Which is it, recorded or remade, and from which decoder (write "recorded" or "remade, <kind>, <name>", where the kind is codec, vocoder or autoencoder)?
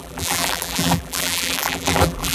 remade, vocoder, BigVGAN v2